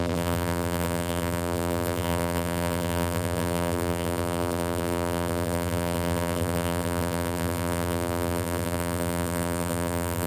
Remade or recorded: remade